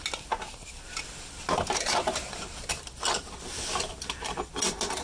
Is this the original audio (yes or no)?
yes